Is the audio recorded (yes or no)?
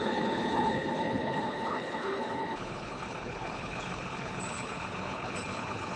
no